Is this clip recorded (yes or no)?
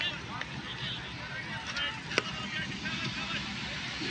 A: yes